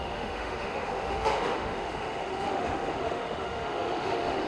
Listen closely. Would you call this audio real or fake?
fake